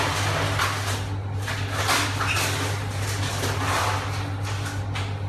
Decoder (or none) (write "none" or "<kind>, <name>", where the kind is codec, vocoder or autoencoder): none